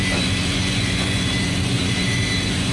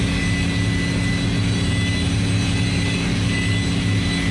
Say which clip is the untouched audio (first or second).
second